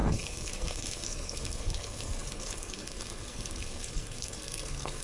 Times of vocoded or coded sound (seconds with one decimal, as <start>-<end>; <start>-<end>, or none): 0.0-5.0